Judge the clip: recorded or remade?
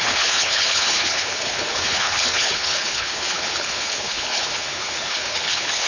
remade